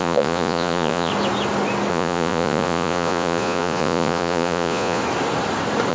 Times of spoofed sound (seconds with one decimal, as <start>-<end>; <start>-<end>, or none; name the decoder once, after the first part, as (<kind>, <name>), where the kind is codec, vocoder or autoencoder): 0.0-1.1 (vocoder, Vocos); 1.9-5.0